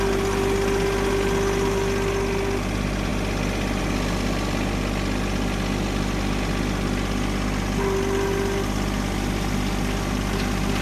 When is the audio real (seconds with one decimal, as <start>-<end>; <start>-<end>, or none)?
0.0-10.8